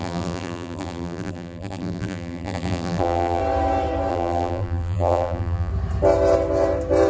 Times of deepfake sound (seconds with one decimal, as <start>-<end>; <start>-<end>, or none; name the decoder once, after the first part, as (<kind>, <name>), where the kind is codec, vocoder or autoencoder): 0.0-3.4 (vocoder, BigVGAN v2); 4.1-5.7